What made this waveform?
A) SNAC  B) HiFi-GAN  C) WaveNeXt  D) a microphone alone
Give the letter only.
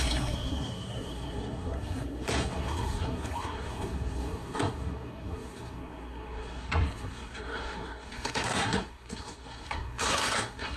A